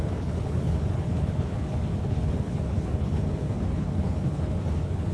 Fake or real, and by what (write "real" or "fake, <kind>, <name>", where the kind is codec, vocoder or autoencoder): fake, codec, HILCodec